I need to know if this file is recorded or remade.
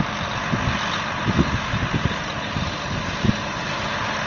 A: recorded